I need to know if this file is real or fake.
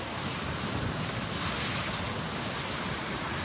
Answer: real